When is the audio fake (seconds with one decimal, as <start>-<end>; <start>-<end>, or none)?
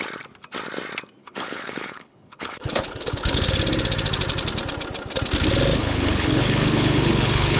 1.2-3.5; 5.8-7.6